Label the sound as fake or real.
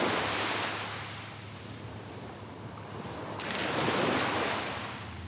real